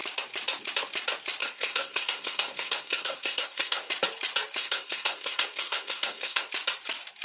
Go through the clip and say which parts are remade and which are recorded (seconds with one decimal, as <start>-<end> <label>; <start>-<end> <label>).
0.0-1.4 recorded; 1.4-3.9 remade; 3.9-4.6 recorded; 4.6-6.5 remade; 6.5-7.2 recorded